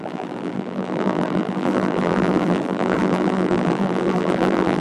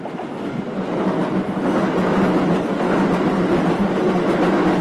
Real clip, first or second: second